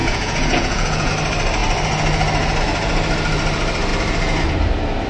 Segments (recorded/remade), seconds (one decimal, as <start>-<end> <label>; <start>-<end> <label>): 0.0-1.1 remade; 1.1-5.1 recorded